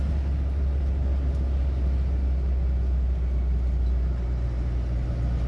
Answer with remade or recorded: recorded